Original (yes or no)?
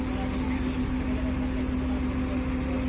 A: yes